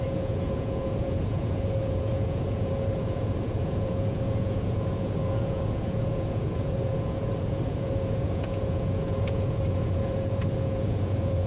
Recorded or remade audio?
remade